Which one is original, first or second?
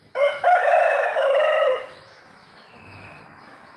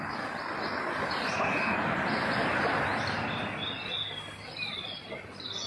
second